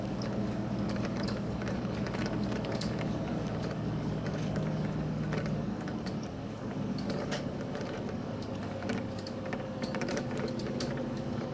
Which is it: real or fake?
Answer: fake